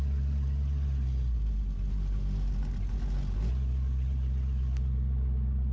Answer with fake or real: real